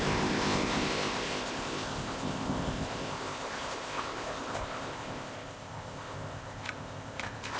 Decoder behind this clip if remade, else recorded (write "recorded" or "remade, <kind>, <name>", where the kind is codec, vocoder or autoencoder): remade, codec, ZipCodec